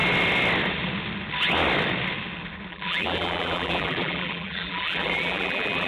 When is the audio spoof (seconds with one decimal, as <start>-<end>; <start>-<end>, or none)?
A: 2.7-5.9